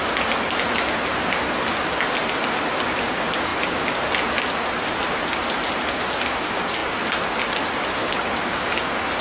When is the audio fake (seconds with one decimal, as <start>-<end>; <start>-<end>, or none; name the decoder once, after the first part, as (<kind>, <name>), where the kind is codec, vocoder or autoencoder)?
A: none